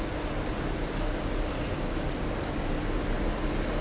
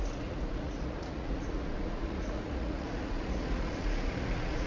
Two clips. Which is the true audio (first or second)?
first